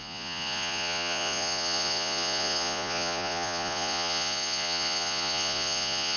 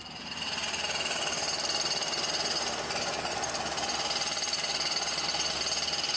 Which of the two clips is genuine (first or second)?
second